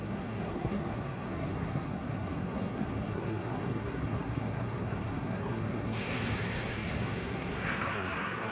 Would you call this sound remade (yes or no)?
yes